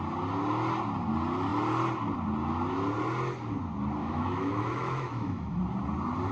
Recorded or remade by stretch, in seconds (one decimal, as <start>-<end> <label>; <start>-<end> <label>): 0.0-4.0 recorded; 4.0-5.6 remade; 5.6-6.3 recorded